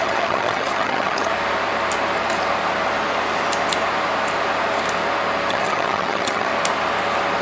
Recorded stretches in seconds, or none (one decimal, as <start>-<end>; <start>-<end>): 1.3-5.5; 6.5-7.4